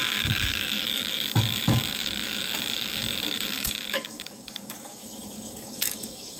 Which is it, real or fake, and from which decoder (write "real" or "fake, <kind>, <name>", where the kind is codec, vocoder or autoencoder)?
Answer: fake, codec, DAC